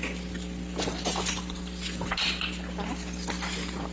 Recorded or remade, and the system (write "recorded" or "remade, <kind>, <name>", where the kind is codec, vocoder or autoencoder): recorded